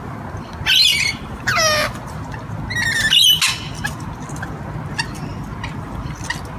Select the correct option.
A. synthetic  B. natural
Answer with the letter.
B